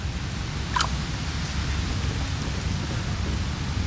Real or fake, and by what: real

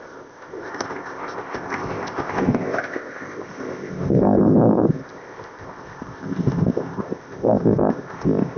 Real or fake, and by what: fake, codec, ZipCodec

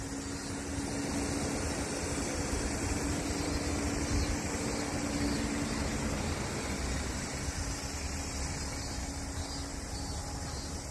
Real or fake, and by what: real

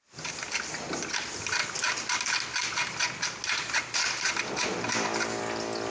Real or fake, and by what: real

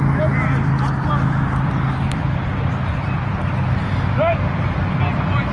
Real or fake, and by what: real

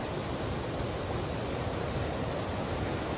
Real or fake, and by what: real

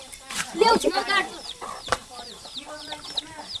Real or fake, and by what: fake, vocoder, BigVGAN v2